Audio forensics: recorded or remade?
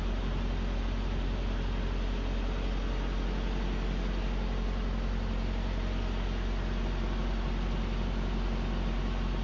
recorded